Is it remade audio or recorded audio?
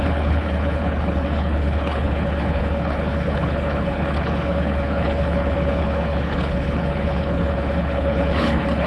remade